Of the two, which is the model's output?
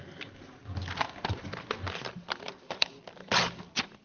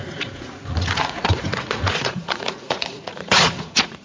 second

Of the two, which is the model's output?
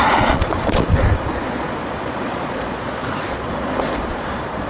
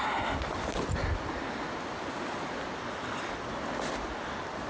first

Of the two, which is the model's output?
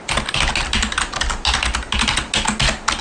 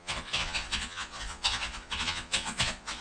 second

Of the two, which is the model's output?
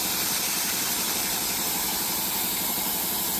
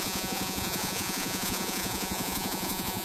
second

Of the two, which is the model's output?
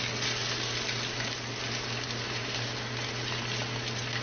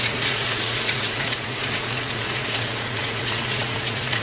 second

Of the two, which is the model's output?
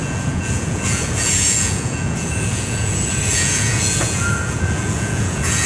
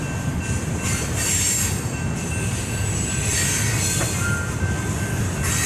first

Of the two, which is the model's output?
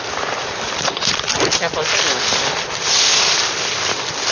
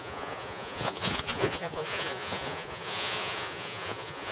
second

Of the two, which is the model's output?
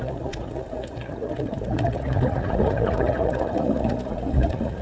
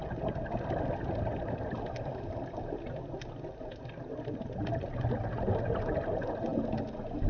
first